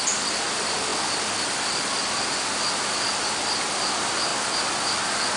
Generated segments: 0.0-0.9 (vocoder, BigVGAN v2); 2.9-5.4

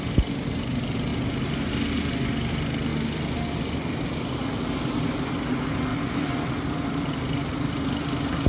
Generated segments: 5.9-7.9 (vocoder, BigVGAN v2)

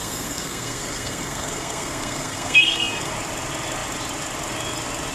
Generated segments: 0.0-3.1 (codec, SNAC)